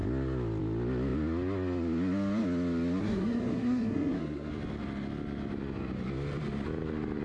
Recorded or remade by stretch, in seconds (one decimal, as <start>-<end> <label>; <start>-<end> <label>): 0.0-3.0 recorded; 3.0-4.5 remade; 4.5-7.2 recorded